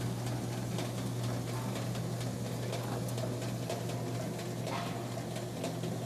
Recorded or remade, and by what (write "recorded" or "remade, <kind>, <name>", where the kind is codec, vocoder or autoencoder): recorded